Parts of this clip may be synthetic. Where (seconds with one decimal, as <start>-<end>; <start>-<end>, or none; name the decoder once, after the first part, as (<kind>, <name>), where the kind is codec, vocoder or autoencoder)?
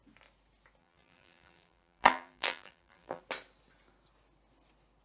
0.8-3.2 (vocoder, BigVGAN v2)